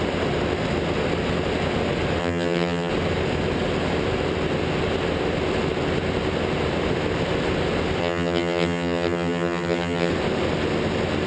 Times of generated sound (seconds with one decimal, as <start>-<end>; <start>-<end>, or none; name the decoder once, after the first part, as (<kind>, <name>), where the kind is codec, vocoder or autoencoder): 2.2-2.9 (vocoder, HiFi-GAN); 8.0-10.1